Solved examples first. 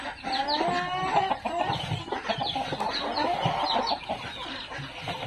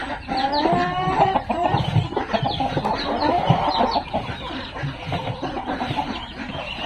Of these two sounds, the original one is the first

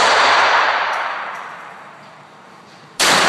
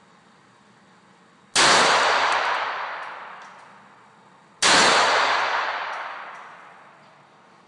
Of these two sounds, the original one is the second